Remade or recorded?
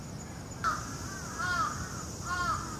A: recorded